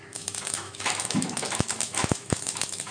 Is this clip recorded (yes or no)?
no